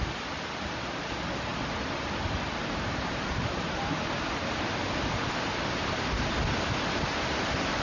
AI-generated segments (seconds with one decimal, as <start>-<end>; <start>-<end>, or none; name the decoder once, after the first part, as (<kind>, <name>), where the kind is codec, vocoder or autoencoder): none